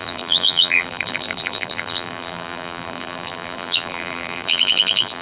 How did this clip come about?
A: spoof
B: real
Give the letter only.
A